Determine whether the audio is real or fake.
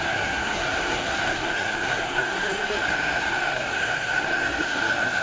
fake